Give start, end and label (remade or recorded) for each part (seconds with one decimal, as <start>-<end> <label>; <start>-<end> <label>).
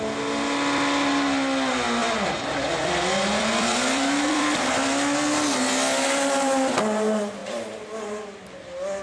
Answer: 0.0-2.0 recorded; 2.0-4.7 remade; 4.7-9.0 recorded